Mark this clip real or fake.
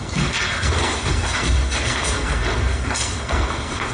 fake